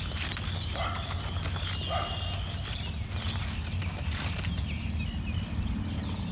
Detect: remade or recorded recorded